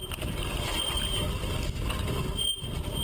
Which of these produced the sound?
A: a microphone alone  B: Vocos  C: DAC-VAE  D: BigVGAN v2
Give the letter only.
A